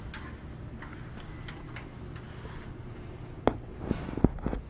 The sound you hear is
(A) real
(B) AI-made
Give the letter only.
A